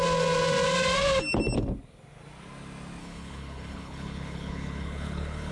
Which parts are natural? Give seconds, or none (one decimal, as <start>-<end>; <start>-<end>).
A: 0.0-3.0